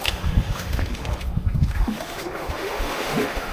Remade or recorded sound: remade